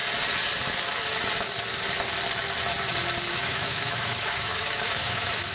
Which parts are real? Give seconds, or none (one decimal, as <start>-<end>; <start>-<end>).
0.0-3.3